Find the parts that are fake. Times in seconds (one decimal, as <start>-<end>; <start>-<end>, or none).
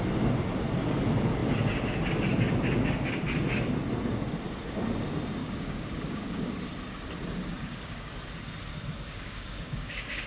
5.4-6.5; 7.5-8.1; 8.7-10.3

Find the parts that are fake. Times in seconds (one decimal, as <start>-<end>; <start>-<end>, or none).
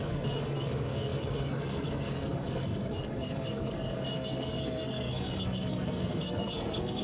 0.0-7.0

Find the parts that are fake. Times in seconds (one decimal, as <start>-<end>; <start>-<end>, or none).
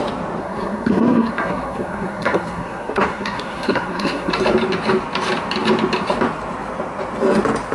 0.4-4.3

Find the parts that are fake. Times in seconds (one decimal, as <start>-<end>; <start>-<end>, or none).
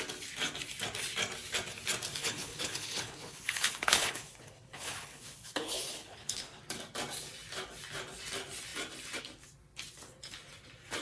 2.1-6.6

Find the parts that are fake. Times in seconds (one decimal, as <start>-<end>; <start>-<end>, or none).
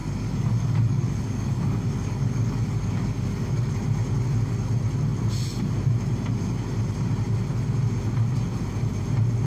0.0-3.7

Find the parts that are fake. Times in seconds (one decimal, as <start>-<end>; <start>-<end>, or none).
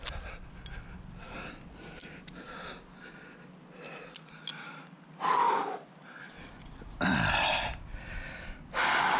none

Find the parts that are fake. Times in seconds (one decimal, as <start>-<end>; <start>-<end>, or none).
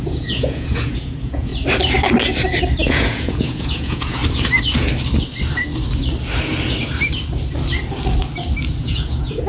0.0-1.5; 2.9-4.2; 8.8-9.5